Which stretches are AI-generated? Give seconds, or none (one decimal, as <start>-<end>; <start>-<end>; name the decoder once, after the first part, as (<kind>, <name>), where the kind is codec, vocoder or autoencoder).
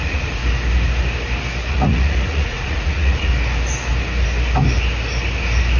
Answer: 0.0-0.4 (vocoder, Vocos); 1.7-3.3